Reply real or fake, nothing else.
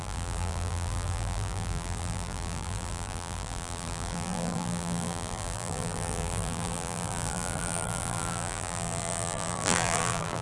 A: fake